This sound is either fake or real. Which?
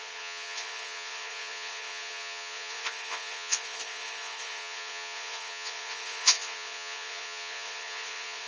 fake